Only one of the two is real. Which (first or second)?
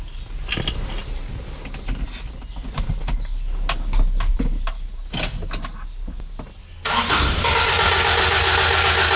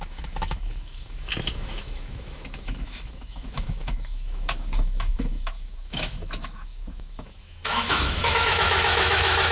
first